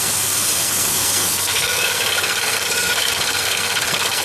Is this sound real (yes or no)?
no